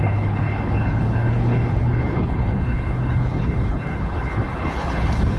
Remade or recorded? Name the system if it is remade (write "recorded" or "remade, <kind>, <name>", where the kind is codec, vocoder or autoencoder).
remade, codec, HILCodec